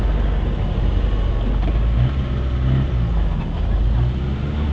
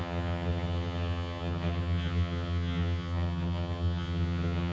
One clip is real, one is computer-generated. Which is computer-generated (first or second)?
second